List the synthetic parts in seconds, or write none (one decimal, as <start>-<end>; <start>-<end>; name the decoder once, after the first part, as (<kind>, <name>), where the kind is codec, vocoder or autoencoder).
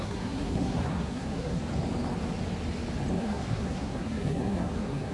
0.0-1.6 (codec, SNAC); 3.2-5.1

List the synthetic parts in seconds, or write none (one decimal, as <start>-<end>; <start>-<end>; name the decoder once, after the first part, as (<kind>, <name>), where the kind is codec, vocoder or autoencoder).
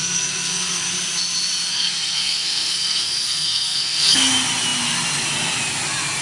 0.0-0.9 (codec, SNAC); 1.7-4.3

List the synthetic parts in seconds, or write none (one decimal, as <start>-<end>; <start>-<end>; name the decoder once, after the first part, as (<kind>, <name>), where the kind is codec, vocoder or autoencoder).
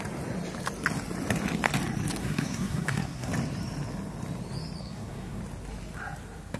2.2-3.3 (codec, SNAC); 4.8-5.4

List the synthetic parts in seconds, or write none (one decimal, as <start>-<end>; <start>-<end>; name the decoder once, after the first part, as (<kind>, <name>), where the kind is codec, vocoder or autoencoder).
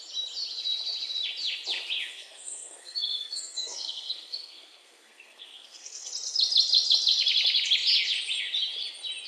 2.1-6.1 (codec, SNAC)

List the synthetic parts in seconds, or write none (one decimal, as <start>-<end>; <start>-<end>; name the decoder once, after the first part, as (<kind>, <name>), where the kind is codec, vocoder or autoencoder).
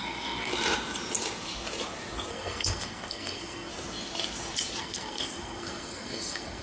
0.0-0.5 (codec, SNAC); 2.3-3.7; 4.8-6.6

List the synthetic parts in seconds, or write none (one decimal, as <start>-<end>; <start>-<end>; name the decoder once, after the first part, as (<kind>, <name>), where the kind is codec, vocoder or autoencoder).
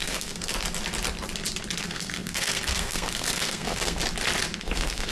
0.0-0.5 (codec, SNAC); 1.8-4.0; 4.6-5.1